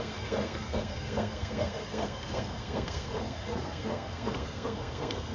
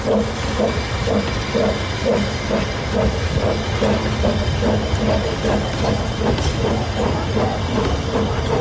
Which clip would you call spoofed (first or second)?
first